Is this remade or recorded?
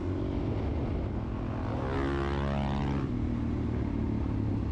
recorded